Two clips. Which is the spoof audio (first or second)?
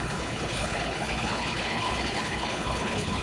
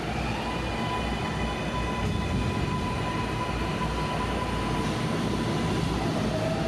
first